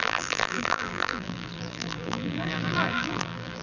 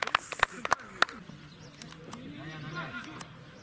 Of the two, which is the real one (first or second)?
second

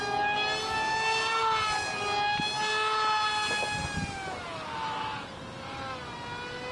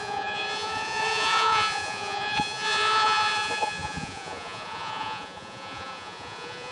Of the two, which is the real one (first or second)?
first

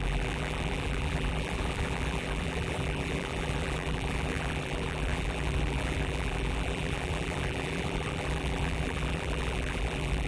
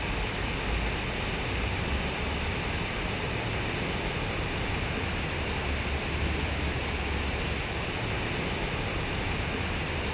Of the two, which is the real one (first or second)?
second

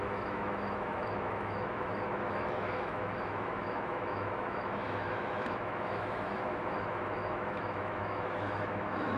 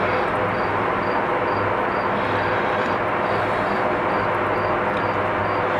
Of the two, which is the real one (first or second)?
second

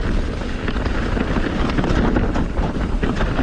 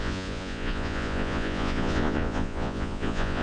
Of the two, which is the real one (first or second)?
first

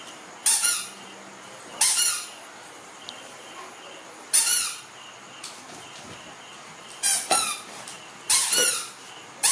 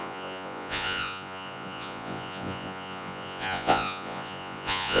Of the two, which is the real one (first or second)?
first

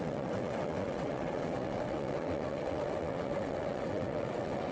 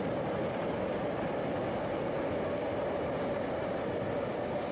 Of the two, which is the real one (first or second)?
second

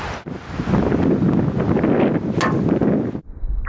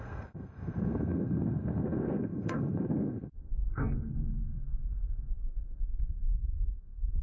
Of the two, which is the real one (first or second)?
first